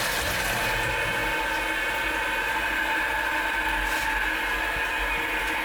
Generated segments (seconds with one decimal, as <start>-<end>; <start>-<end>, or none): none